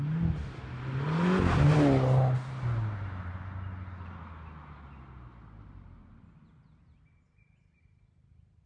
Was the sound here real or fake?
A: real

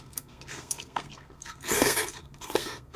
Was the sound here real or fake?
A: fake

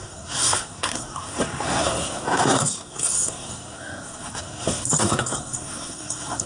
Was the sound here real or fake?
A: fake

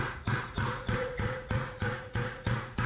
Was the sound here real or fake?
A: fake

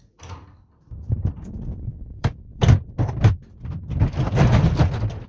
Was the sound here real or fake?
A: fake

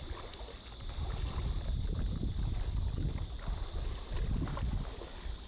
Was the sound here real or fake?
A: real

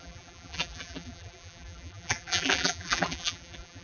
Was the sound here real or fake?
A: fake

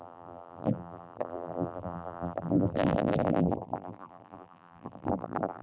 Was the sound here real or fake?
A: fake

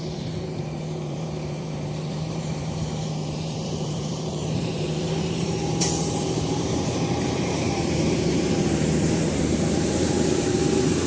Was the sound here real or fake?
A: fake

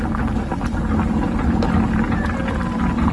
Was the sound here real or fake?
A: real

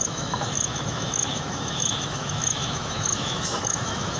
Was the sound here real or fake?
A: fake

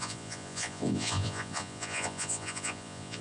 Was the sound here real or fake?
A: fake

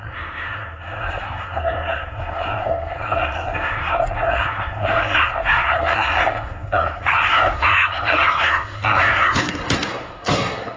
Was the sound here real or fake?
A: fake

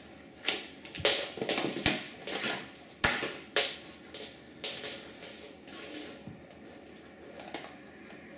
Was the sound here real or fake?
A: real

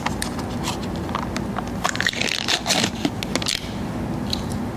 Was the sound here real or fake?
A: real